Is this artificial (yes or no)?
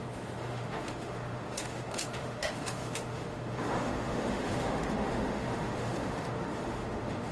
yes